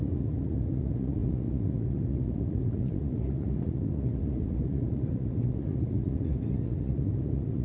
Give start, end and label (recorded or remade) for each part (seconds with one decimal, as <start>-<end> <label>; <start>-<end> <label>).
0.0-7.6 remade